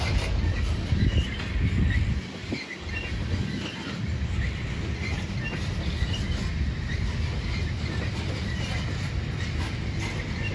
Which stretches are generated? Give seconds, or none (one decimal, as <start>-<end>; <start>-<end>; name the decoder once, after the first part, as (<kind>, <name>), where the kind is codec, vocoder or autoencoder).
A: none